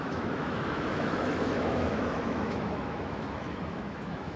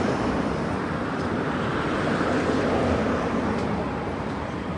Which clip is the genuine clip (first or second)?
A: second